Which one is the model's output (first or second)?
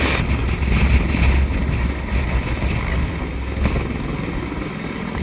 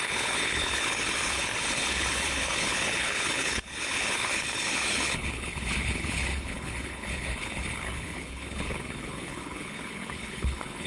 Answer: second